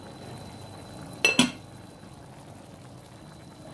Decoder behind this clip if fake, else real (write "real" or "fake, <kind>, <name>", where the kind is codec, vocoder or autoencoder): real